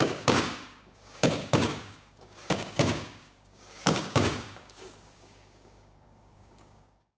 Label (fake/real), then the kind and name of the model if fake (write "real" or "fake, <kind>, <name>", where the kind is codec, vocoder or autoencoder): fake, codec, DAC